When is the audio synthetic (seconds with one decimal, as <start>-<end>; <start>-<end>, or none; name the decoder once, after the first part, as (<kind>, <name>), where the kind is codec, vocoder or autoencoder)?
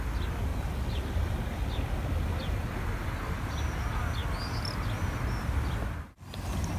none